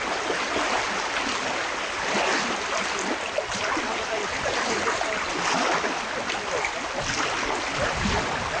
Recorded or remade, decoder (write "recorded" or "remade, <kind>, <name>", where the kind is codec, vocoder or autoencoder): recorded